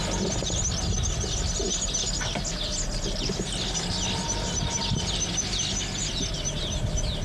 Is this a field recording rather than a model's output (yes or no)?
yes